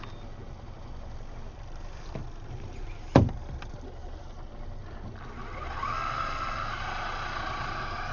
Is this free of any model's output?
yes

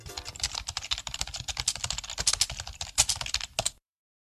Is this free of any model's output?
yes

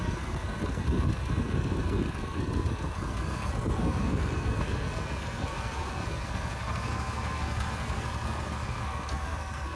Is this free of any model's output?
no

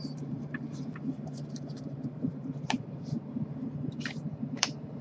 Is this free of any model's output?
no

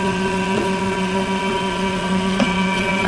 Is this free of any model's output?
no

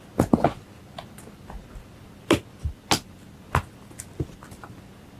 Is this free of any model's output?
yes